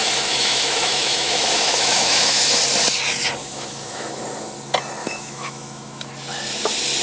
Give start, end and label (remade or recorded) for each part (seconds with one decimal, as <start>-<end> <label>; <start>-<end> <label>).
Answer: 0.0-2.6 remade; 2.6-3.4 recorded; 3.4-4.2 remade; 4.2-5.0 recorded; 5.0-6.1 remade; 6.1-7.0 recorded